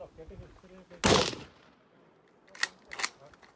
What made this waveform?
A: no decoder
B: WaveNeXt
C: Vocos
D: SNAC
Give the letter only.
A